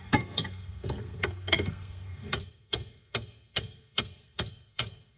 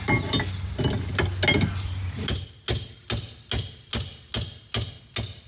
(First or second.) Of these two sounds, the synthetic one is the first